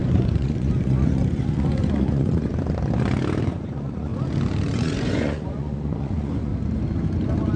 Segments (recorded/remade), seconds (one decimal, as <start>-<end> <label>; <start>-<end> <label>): 0.0-2.5 remade; 2.5-3.4 recorded; 3.4-4.1 remade; 4.1-4.7 recorded; 4.7-6.5 remade; 6.5-7.6 recorded